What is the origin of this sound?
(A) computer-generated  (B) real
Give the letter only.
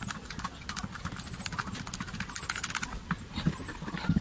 B